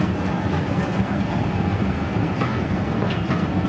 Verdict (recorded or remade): remade